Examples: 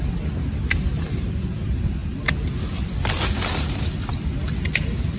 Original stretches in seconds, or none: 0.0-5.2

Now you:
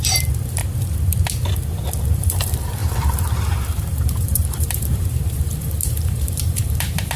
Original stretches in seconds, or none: 0.6-2.0